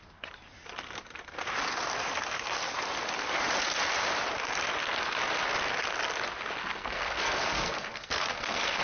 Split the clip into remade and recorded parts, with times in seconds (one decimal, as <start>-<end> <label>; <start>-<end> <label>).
0.0-6.6 recorded; 6.6-8.8 remade